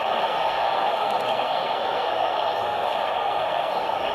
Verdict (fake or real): fake